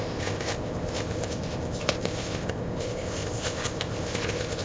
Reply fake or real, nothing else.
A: fake